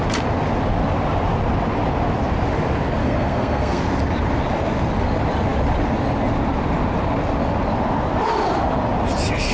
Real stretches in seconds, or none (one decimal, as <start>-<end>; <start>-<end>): 0.0-3.0; 3.8-9.5